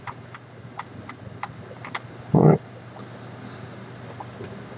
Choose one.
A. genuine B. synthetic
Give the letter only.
A